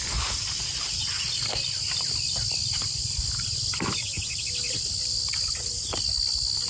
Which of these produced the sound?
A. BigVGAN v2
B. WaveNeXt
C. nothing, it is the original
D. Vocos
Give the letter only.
C